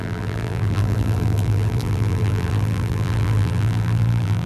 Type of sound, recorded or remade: remade